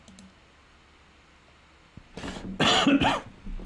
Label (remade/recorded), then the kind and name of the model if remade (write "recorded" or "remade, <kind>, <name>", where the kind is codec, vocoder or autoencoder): recorded